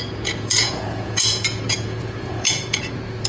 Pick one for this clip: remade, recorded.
remade